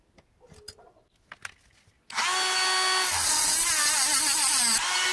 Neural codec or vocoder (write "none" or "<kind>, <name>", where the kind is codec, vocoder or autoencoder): none